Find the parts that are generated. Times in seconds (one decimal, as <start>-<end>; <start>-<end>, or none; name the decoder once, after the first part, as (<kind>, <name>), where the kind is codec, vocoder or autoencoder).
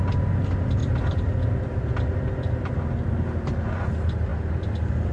0.8-3.9 (vocoder, BigVGAN v2); 4.3-5.1